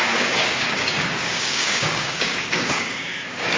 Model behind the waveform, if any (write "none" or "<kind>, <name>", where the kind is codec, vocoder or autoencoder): codec, DAC